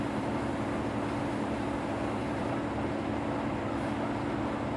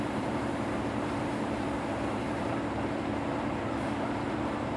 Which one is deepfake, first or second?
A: second